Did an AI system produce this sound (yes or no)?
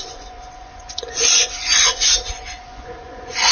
yes